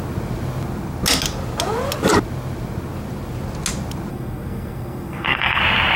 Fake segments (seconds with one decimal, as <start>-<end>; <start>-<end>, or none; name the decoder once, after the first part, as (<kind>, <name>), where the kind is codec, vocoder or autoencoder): 4.1-5.6 (codec, SNAC)